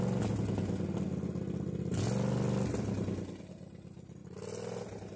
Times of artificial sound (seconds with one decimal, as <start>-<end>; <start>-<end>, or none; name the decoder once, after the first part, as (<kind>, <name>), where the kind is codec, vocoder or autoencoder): none